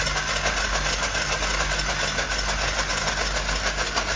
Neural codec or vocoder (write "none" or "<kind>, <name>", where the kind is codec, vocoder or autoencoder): none